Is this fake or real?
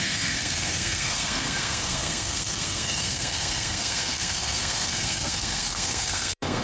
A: fake